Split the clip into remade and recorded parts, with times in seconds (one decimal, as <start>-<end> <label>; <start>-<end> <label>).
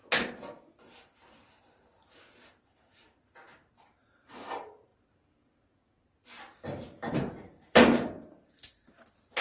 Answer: 0.0-0.8 recorded; 0.8-4.9 remade; 4.9-7.1 recorded; 7.1-9.4 remade